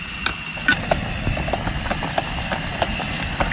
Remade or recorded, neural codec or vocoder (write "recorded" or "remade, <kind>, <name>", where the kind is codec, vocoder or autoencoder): recorded